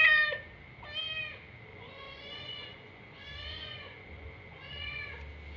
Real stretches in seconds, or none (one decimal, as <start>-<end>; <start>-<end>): 0.0-1.7; 5.1-5.6

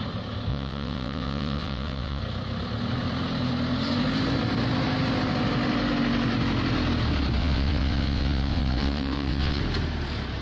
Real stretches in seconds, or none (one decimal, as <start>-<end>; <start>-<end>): 0.0-0.5; 2.2-7.4; 9.6-10.4

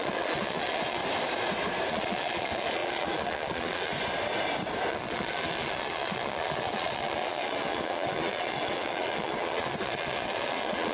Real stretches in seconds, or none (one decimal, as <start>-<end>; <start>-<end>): 1.0-1.9; 3.9-4.9

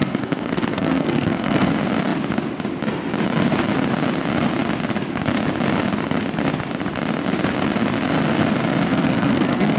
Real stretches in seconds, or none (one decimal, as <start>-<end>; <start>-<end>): 1.7-8.9

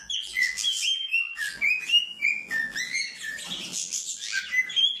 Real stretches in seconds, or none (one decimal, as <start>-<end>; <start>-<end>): 3.0-3.7; 4.4-5.0